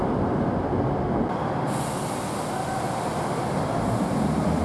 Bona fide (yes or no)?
yes